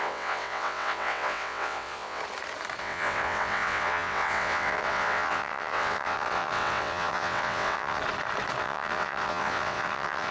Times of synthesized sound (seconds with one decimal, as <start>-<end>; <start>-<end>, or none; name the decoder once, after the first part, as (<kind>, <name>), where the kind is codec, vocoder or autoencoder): 0.0-2.2 (vocoder, WaveNeXt); 2.8-8.0; 8.6-10.3